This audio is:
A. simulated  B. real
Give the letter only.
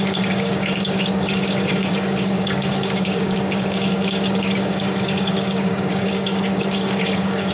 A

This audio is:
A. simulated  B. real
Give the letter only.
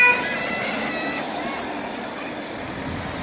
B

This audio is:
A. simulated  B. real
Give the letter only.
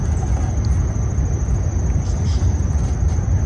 B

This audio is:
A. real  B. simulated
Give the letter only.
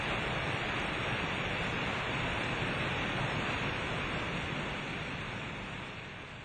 B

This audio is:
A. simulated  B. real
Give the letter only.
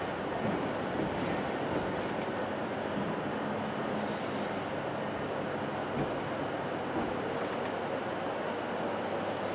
B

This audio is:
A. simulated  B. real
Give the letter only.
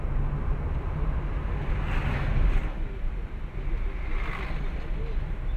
B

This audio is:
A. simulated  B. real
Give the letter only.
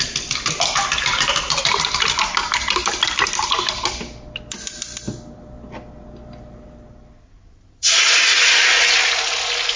B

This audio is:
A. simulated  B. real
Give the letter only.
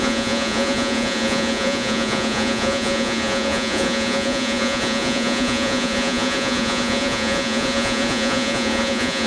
A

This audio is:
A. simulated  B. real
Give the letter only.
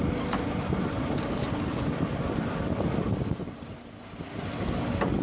B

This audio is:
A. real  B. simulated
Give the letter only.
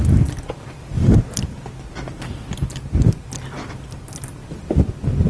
A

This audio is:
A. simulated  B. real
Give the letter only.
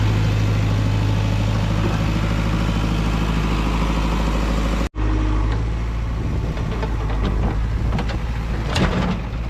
B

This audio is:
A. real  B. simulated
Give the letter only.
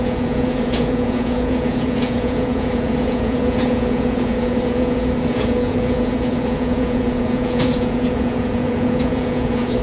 B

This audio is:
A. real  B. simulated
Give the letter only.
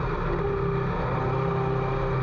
A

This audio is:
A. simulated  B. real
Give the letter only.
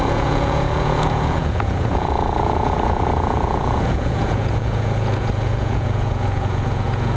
A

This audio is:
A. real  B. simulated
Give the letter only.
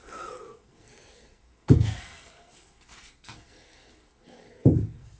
B